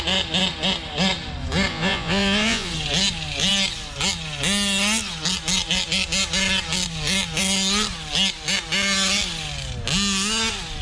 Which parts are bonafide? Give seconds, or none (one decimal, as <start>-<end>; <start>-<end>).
0.0-1.7; 2.7-10.8